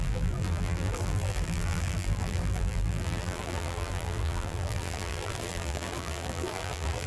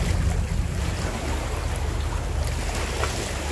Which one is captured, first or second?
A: second